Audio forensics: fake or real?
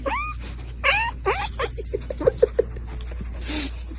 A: real